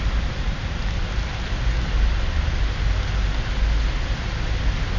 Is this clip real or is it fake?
real